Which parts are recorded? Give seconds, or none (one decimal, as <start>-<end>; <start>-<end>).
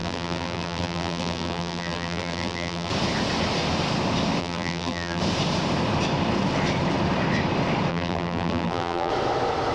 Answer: 2.9-4.4; 5.2-7.9; 9.1-9.7